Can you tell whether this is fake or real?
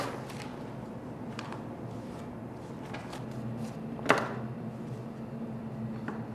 real